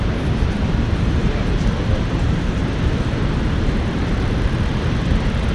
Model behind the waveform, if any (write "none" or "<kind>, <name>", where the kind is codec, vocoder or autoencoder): vocoder, BigVGAN v2